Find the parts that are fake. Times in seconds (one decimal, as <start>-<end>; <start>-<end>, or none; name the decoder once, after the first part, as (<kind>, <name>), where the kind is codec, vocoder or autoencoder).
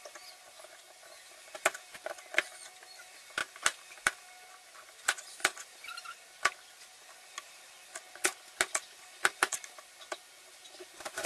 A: none